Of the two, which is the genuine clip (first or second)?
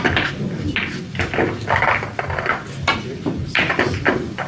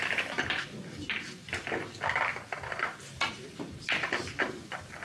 first